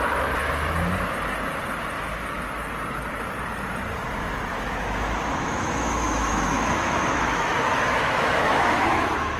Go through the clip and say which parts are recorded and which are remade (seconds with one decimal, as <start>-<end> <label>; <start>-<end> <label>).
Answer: 0.0-4.5 recorded; 4.5-9.4 remade